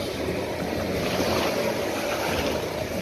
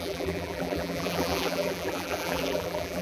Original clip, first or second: first